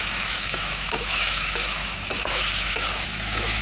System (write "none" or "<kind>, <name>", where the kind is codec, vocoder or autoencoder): autoencoder, DAC-VAE